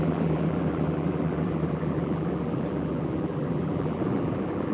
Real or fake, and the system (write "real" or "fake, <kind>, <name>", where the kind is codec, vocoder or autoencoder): fake, vocoder, BigVGAN v2